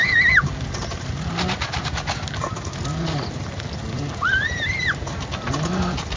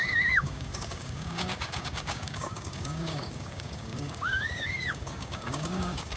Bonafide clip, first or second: first